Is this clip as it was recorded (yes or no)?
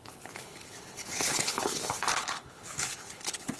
no